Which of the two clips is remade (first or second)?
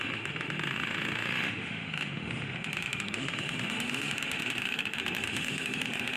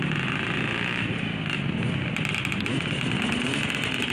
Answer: first